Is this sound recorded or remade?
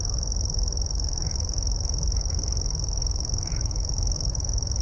remade